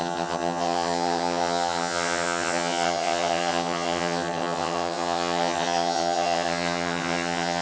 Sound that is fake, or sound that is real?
fake